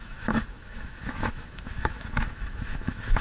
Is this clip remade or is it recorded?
remade